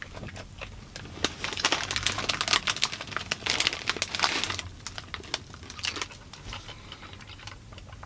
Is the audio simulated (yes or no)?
no